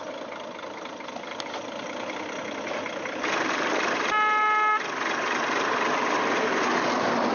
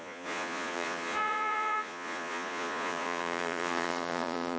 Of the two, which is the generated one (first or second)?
second